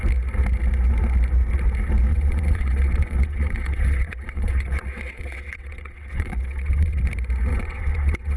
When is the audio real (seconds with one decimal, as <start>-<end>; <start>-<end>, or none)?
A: 0.0-2.1; 7.0-7.5